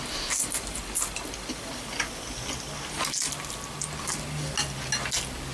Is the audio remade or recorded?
recorded